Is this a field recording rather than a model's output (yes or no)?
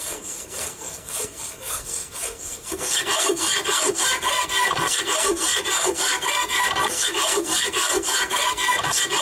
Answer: no